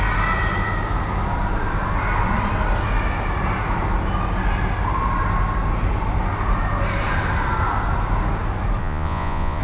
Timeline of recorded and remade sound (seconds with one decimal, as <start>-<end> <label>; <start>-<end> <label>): 0.0-8.8 recorded; 8.8-9.6 remade